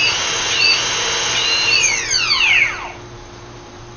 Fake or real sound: real